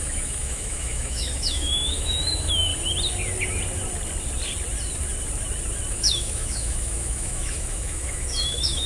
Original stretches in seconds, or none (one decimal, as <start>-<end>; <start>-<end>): 2.7-5.9